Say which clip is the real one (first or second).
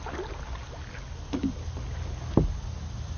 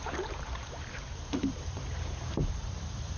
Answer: first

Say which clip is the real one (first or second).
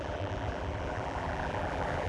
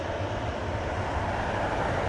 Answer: second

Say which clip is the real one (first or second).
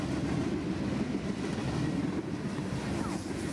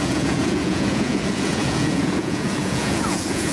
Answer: first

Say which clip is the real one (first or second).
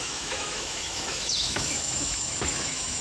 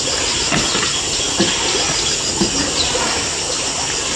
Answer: second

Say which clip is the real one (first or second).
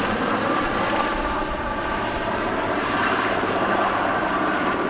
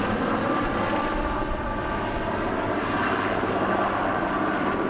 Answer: second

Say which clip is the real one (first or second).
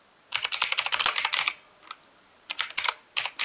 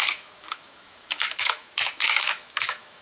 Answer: first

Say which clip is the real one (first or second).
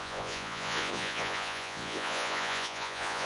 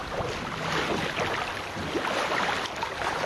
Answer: second